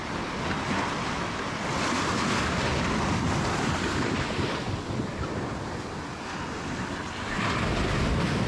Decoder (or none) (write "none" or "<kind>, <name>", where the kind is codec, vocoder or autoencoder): none